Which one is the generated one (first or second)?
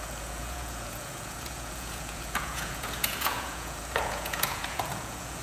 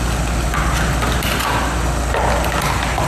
first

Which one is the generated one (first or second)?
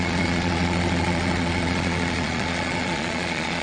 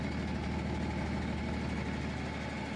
first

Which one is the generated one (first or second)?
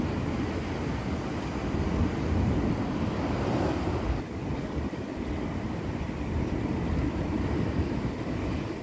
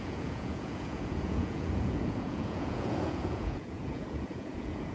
second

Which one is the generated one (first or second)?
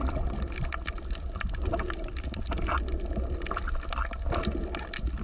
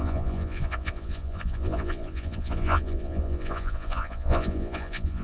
second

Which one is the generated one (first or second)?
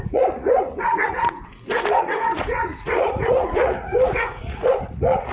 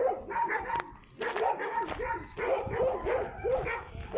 first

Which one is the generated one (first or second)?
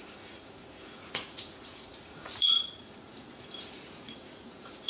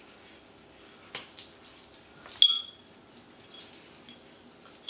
first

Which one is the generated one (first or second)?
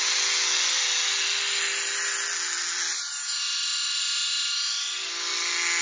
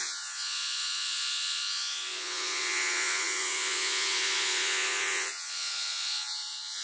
second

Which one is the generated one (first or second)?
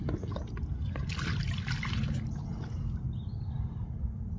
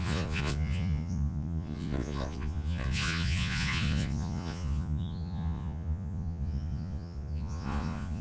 second